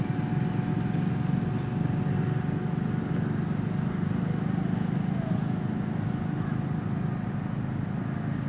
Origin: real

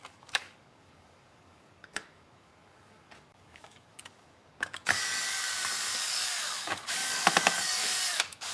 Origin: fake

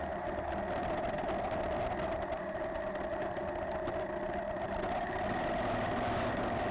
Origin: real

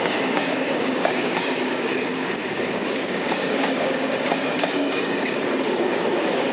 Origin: fake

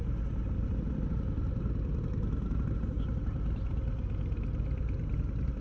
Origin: real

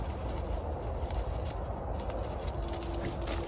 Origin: real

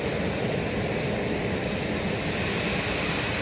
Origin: real